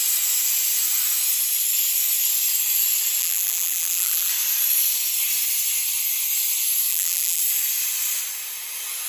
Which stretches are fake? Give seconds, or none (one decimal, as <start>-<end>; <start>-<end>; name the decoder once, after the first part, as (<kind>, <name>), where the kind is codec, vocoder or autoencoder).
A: 3.2-4.3 (vocoder, BigVGAN v2); 6.9-7.4